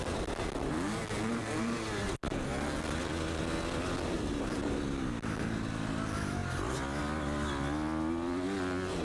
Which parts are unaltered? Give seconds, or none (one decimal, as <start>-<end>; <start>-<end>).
0.0-9.0